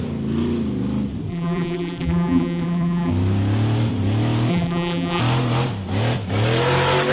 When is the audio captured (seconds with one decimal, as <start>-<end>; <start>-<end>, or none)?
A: 0.0-1.3; 3.1-4.5; 5.2-7.1